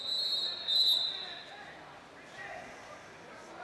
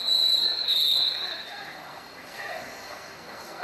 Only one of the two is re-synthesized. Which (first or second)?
second